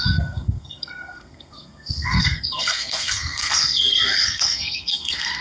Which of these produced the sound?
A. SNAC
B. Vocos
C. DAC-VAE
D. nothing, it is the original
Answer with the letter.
A